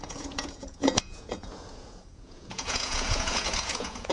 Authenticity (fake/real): fake